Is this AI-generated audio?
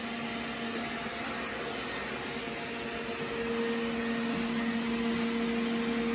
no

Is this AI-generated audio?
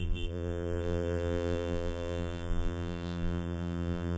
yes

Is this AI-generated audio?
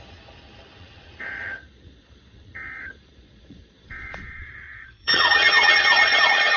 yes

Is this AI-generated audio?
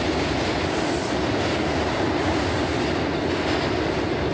yes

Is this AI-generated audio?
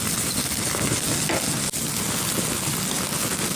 no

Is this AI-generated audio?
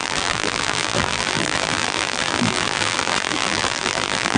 yes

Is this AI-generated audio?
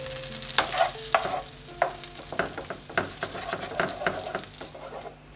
no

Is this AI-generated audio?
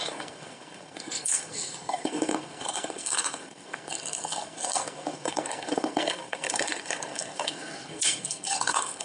yes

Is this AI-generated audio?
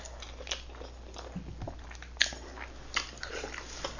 no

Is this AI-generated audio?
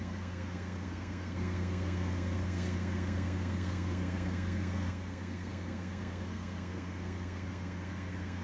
yes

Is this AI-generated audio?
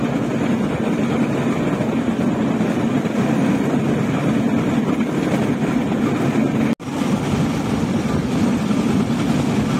no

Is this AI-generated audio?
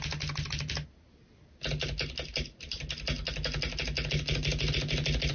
no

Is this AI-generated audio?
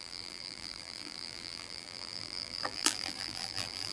yes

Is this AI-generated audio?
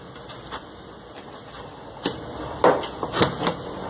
no